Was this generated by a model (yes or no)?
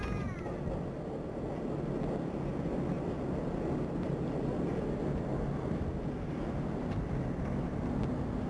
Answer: no